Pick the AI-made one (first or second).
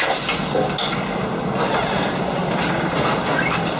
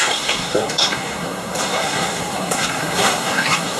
second